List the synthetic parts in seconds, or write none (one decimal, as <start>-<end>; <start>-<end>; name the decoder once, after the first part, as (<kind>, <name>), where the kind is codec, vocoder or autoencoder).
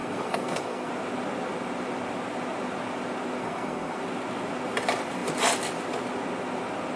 0.0-0.9 (codec, SNAC); 3.4-4.0